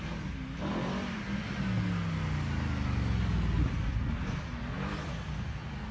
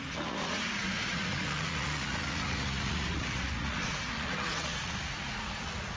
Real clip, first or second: first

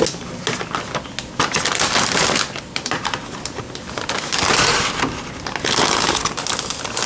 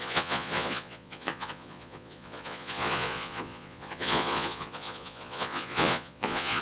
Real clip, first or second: first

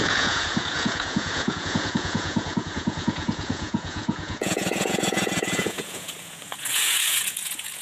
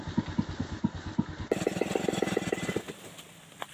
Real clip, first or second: second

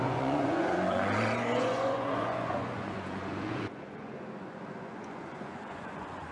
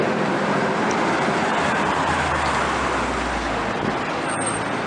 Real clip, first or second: second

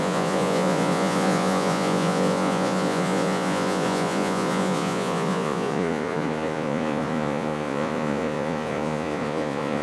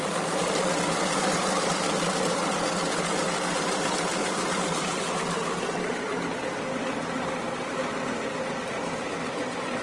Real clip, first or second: second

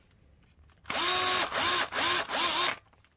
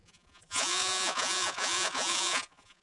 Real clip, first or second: first